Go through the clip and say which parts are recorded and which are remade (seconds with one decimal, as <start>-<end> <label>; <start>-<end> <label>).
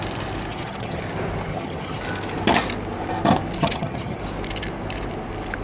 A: 0.0-0.5 recorded; 0.5-1.0 remade; 1.0-1.5 recorded; 1.5-2.0 remade; 2.0-3.6 recorded; 3.6-4.2 remade; 4.2-5.6 recorded